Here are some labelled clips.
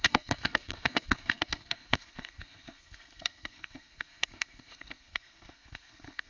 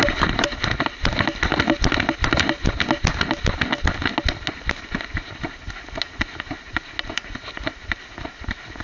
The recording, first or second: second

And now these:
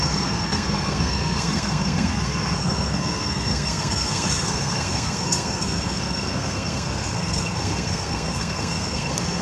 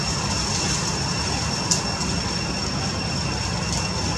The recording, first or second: second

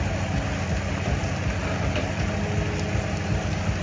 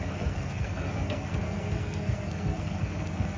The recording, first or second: first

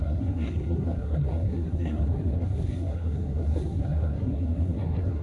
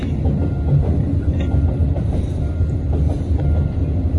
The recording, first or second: second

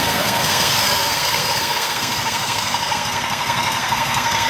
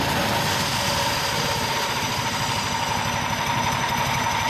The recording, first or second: second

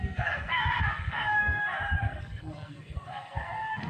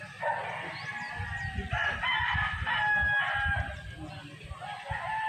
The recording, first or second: second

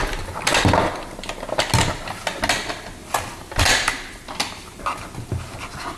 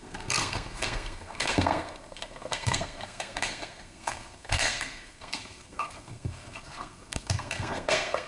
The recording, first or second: first